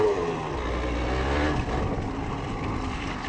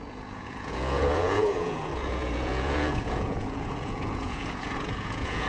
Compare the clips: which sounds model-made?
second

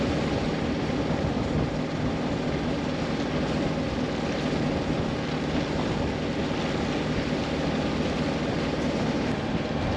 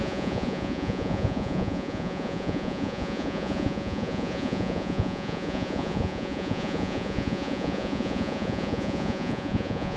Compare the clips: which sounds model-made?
second